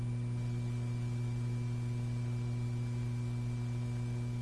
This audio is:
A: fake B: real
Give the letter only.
B